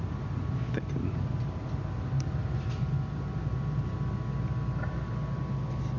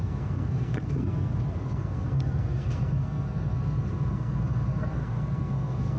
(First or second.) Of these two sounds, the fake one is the second